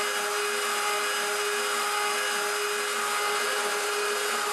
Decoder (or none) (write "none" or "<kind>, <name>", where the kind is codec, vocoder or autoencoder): none